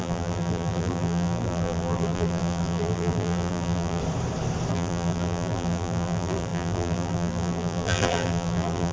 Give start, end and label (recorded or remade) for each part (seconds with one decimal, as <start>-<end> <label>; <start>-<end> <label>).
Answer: 0.0-4.0 remade; 4.0-4.7 recorded; 4.7-8.9 remade

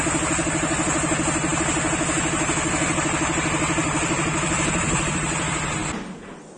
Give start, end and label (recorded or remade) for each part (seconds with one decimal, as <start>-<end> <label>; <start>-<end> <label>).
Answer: 0.0-3.8 recorded; 3.8-5.1 remade; 5.1-6.6 recorded

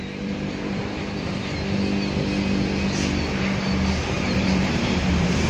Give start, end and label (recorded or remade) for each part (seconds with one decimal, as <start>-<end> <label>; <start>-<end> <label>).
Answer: 0.0-0.8 remade; 0.8-4.1 recorded; 4.1-5.5 remade

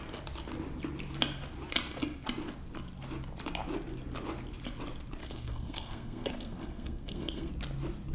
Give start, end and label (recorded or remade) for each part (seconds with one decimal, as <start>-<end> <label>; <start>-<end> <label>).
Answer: 0.0-5.2 recorded; 5.2-7.5 remade; 7.5-8.1 recorded

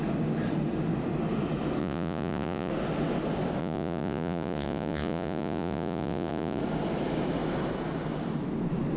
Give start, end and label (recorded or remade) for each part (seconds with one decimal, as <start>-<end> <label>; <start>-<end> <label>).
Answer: 0.0-1.8 recorded; 1.8-2.7 remade; 2.7-3.6 recorded; 3.6-6.6 remade; 6.6-9.0 recorded

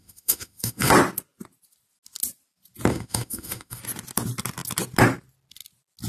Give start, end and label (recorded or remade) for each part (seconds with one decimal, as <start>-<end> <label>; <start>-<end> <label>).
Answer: 0.0-0.9 remade; 0.9-2.9 recorded; 2.9-3.8 remade; 3.8-6.1 recorded

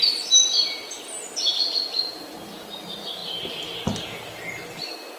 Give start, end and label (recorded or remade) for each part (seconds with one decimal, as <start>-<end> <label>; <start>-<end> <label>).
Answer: 0.0-5.2 recorded